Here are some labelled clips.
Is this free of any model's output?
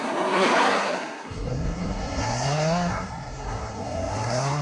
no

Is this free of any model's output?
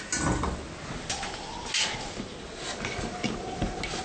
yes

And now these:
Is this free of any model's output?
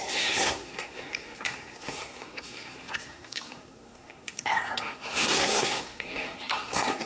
no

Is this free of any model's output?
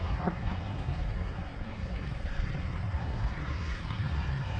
no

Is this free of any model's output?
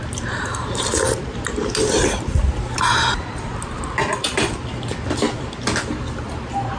yes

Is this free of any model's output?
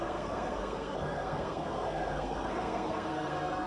no